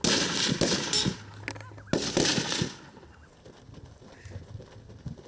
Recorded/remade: recorded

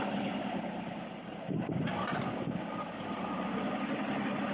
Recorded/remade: recorded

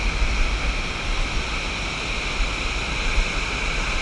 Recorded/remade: recorded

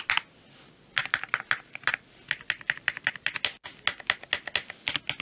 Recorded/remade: recorded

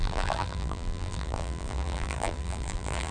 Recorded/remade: remade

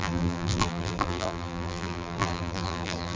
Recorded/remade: remade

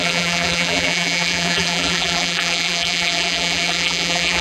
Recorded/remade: remade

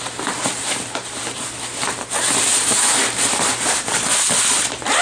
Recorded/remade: remade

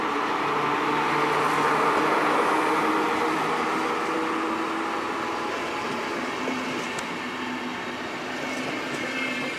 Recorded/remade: recorded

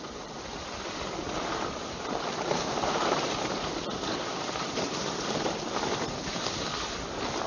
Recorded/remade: remade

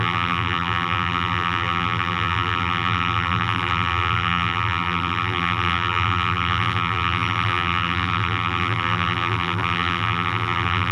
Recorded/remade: remade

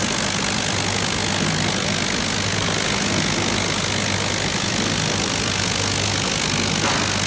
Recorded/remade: recorded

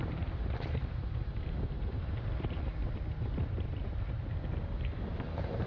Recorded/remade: remade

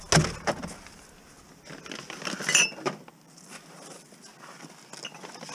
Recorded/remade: recorded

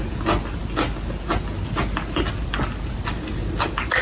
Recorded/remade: recorded